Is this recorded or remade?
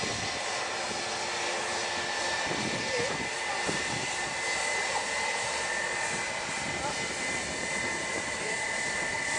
recorded